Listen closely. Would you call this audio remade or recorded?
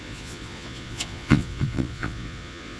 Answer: remade